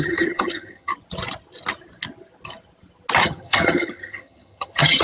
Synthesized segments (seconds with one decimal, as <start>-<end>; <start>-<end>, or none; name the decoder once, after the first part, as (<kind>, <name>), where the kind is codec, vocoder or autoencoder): 0.0-0.9 (vocoder, HiFi-GAN); 3.2-5.0